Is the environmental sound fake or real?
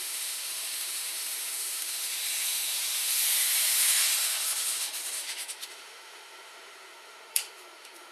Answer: fake